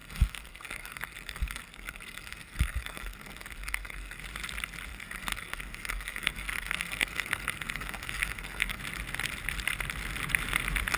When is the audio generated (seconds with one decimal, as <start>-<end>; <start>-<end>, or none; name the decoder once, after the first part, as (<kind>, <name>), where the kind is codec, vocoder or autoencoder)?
0.0-4.2 (codec, SNAC); 4.9-8.8

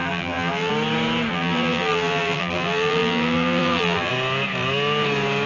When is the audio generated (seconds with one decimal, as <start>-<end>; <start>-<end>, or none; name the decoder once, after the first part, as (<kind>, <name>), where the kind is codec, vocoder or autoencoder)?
0.0-0.7 (vocoder, BigVGAN v2); 1.3-4.1

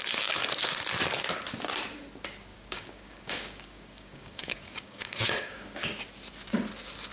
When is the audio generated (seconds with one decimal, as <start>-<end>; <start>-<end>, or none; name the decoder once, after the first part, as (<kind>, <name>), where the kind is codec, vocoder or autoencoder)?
2.5-6.0 (codec, DAC)

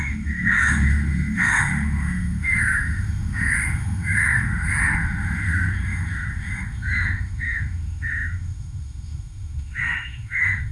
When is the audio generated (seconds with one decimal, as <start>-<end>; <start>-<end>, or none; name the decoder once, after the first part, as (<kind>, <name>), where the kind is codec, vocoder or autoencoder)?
0.0-10.7 (autoencoder, DAC-VAE)

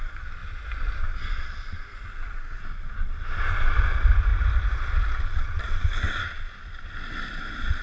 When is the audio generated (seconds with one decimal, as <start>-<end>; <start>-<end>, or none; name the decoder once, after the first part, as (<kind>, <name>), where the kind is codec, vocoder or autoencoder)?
none

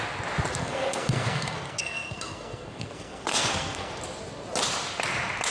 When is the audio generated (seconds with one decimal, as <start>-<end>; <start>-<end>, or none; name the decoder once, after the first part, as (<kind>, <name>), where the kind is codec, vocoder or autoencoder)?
0.6-3.9 (codec, SNAC)